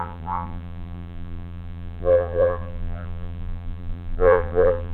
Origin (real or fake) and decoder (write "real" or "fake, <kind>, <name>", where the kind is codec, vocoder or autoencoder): fake, vocoder, BigVGAN v2